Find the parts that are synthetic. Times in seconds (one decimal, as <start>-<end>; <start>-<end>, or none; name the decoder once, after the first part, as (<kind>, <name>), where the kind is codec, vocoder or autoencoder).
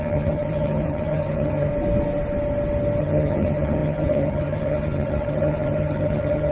0.0-1.7 (vocoder, HiFi-GAN); 3.0-6.5